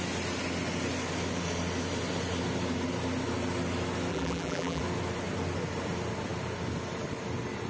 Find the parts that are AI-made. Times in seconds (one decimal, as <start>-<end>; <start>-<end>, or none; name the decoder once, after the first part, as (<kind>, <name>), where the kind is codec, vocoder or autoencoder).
4.1-4.8 (vocoder, BigVGAN v2)